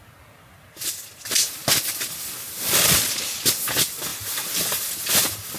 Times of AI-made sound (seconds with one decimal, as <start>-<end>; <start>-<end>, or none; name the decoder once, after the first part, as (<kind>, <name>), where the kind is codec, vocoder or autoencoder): none